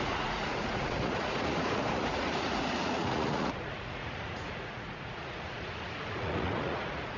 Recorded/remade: remade